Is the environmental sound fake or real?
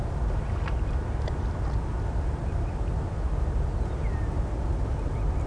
real